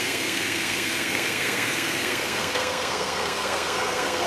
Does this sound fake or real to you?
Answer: fake